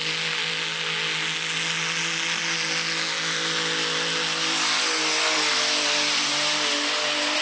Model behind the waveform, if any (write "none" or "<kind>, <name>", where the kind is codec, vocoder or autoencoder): none